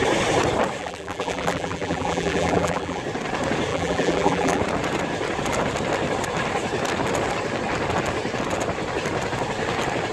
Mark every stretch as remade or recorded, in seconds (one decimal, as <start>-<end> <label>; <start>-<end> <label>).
0.0-0.8 recorded; 0.8-3.0 remade; 3.0-3.7 recorded; 3.7-4.6 remade; 4.6-10.1 recorded